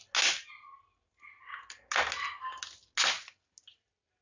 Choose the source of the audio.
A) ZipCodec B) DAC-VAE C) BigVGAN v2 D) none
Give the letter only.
D